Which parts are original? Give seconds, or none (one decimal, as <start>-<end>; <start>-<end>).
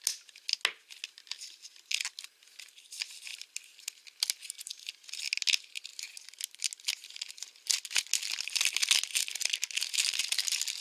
0.0-10.8